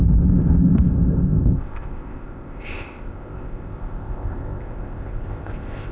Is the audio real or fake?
fake